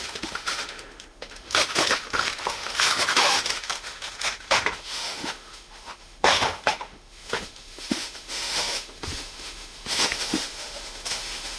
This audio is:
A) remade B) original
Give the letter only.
A